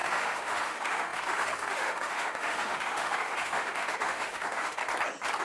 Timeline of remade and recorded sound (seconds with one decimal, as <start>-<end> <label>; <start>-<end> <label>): 0.0-4.8 remade; 4.8-5.4 recorded